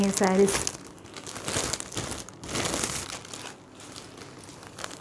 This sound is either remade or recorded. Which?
recorded